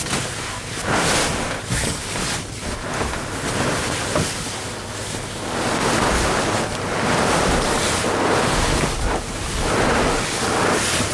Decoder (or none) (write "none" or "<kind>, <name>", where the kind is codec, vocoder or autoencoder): none